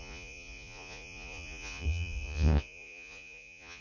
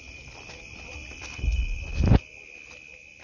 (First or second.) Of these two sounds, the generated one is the first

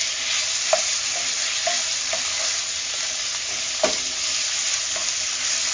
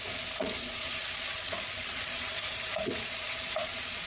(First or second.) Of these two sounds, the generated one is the second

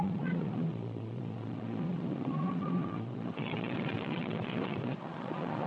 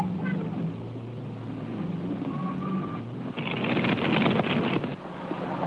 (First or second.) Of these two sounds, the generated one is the first